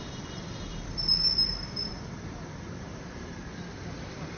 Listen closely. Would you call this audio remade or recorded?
remade